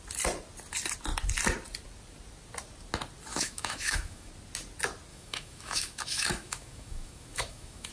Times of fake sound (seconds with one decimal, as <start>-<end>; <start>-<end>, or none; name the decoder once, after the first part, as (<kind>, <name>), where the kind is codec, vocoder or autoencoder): 3.3-4.3 (autoencoder, DAC-VAE); 5.1-7.9